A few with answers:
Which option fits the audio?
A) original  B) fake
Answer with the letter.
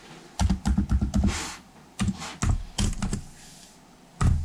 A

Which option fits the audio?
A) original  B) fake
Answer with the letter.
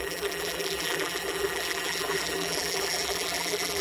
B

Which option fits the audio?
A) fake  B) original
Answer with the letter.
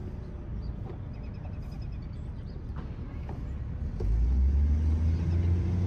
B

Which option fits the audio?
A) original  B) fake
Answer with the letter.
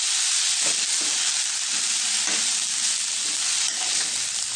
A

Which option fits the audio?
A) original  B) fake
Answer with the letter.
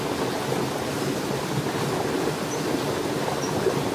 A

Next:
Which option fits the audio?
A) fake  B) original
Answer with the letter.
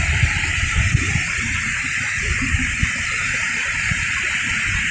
A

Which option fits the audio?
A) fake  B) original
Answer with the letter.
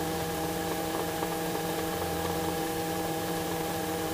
A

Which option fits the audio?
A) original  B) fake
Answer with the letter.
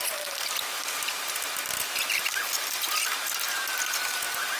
A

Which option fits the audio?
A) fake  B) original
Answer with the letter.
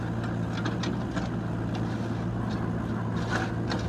B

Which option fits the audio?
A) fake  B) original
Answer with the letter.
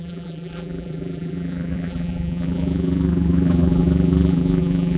A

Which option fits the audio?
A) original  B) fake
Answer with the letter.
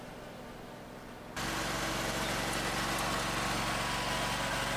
A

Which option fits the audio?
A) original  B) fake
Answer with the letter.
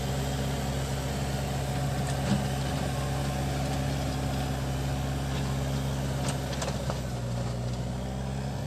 A